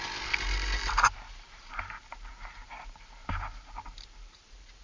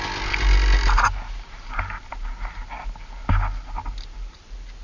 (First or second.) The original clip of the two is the second